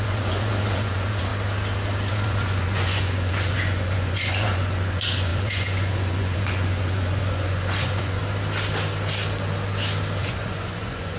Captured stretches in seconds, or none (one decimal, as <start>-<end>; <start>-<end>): 1.3-2.1; 8.2-10.2

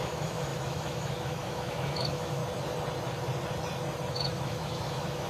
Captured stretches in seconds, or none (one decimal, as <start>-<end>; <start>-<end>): 2.4-4.1

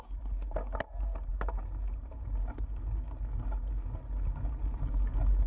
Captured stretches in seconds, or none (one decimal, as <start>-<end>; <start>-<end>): 0.0-5.5

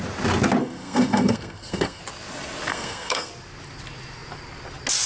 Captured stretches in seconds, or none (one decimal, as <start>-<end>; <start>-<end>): 0.0-0.6; 2.0-2.7; 3.3-5.1